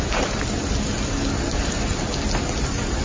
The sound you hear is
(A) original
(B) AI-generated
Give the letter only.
A